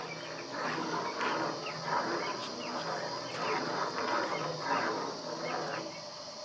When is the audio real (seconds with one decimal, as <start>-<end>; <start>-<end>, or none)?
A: 0.0-0.5; 1.0-6.4